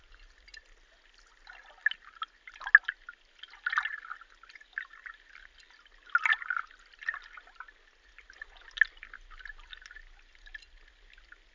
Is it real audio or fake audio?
real